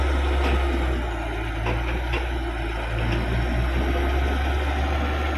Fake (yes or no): no